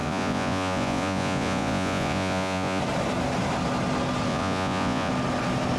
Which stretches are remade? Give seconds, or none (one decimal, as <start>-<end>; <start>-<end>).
0.0-2.8; 4.3-5.1

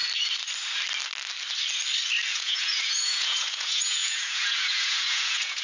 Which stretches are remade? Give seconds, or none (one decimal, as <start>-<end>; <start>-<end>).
2.3-5.6

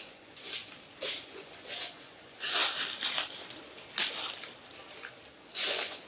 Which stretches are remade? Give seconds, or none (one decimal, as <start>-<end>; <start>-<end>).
0.0-0.6; 1.2-2.6; 5.4-6.1

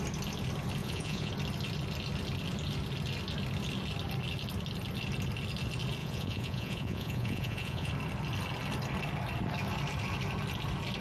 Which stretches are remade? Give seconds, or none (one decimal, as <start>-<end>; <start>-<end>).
0.8-1.3; 6.0-7.9

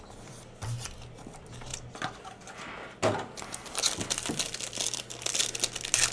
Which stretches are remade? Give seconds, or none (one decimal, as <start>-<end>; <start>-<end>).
none

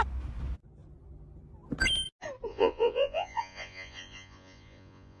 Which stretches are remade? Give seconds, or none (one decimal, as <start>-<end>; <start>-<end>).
2.5-5.2

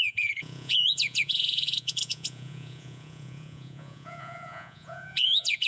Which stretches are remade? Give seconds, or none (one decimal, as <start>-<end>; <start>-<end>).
0.0-5.7

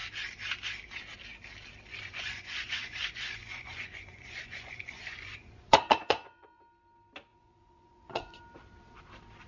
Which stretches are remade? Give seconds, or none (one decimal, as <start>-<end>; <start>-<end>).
1.9-6.6; 7.3-8.4